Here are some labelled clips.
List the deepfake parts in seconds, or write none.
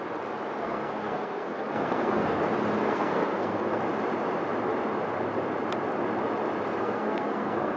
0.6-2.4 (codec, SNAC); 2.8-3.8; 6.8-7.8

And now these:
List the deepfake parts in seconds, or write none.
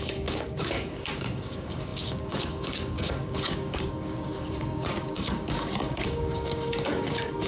0.0-7.5 (codec, DAC)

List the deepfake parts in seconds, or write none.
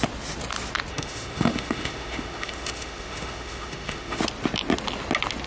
0.9-4.2 (autoencoder, DAC-VAE)